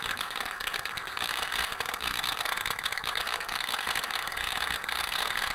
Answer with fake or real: fake